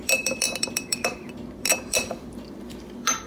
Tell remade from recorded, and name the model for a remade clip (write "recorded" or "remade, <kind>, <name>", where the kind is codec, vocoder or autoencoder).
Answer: remade, vocoder, BigVGAN v2